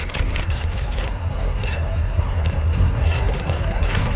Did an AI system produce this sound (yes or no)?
yes